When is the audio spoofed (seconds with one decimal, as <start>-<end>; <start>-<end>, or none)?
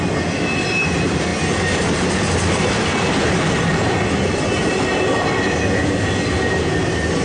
none